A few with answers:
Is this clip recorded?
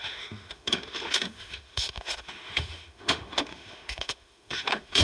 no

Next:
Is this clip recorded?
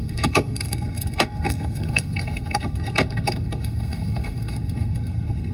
no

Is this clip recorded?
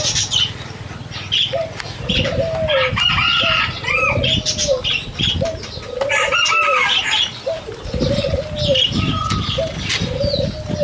yes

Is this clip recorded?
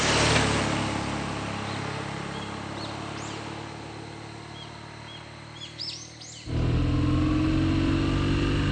yes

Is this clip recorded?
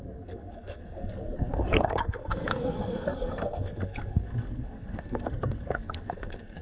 no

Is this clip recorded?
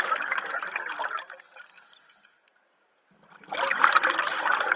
yes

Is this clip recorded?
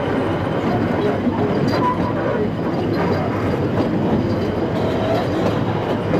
yes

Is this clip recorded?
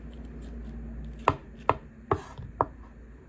yes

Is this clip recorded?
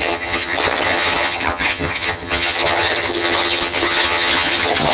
no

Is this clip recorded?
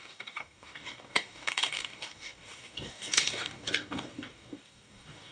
no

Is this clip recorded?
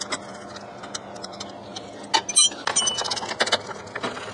yes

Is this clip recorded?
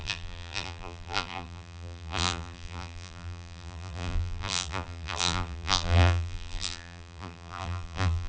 no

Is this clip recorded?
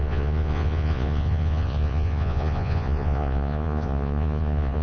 no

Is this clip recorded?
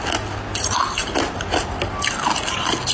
yes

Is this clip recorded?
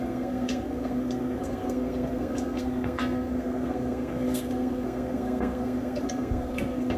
no